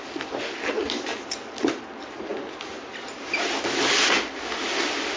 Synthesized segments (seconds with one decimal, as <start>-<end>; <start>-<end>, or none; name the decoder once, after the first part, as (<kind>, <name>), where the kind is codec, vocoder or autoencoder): none